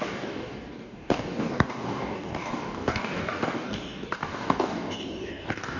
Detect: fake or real fake